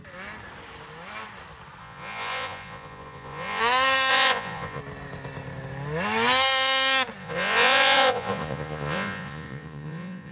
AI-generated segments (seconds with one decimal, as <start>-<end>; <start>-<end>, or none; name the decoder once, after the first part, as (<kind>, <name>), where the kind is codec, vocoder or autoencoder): 1.8-3.6 (vocoder, Vocos); 4.1-4.8; 7.2-10.3